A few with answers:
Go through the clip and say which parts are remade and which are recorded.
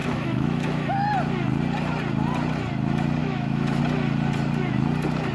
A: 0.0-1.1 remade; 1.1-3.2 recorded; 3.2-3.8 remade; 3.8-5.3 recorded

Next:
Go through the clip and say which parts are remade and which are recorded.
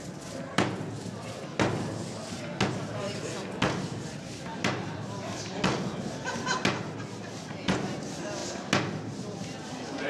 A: 0.0-4.5 recorded; 4.5-5.2 remade; 5.2-10.1 recorded